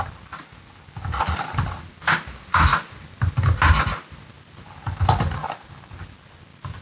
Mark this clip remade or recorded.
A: recorded